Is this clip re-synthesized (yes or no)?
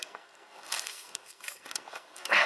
yes